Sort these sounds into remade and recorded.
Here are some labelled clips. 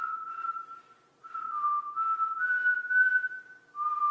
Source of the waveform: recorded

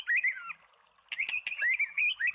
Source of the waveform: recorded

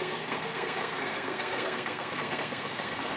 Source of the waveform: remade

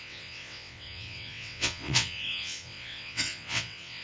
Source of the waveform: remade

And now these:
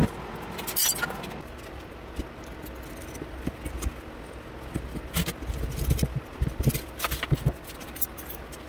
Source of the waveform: recorded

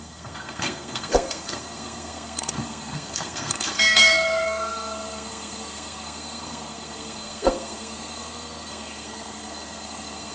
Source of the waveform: remade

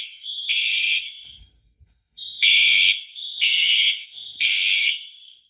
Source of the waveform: remade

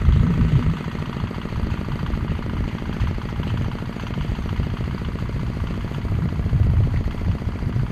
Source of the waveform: remade